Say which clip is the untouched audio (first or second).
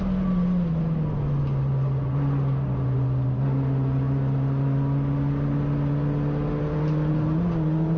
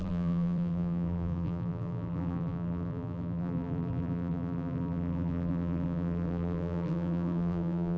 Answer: first